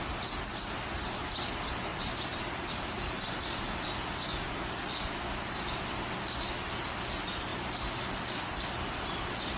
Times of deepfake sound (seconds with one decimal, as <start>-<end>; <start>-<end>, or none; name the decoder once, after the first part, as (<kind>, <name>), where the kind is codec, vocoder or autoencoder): 1.9-3.8 (vocoder, BigVGAN v2)